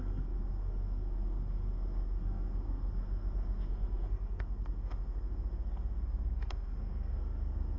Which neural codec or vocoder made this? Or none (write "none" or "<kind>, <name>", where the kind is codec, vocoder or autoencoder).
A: codec, SNAC